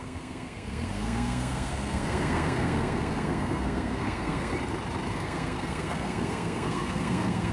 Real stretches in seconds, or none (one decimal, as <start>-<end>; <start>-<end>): 4.5-5.1